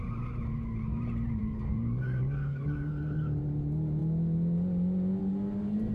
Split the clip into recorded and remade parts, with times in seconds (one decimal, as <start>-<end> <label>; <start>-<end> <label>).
0.0-1.4 recorded; 1.4-3.4 remade; 3.4-5.9 recorded